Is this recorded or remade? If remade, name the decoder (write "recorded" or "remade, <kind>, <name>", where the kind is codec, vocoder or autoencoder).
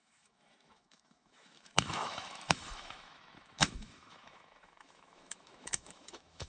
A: remade, autoencoder, DAC-VAE